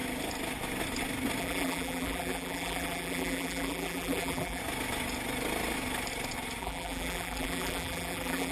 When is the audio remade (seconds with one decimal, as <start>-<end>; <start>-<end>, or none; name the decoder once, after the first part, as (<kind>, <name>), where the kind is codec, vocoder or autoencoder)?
1.4-4.6 (vocoder, BigVGAN v2); 6.6-8.5